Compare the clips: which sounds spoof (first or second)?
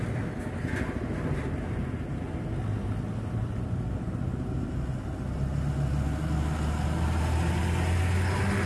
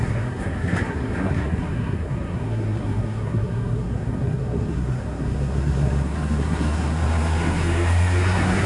second